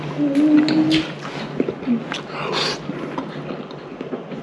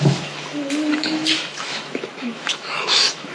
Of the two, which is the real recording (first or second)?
first